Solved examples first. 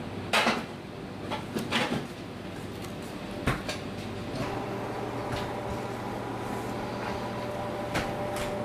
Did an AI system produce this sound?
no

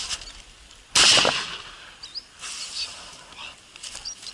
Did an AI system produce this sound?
no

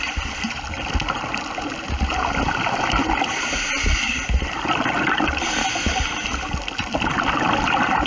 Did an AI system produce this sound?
no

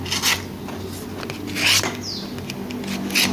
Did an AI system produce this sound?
no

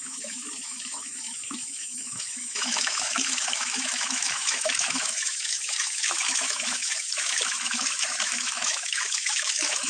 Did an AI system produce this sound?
yes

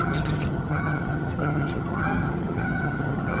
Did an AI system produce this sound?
yes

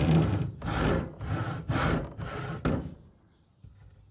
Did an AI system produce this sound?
no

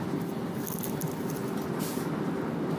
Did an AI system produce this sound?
no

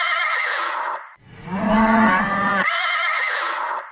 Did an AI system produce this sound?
yes